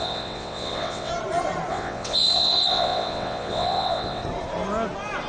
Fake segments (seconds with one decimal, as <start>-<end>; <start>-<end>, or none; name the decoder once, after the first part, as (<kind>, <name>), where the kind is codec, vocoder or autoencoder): 0.0-1.1 (vocoder, WaveNeXt); 1.7-4.2